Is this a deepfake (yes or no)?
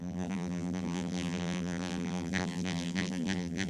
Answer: yes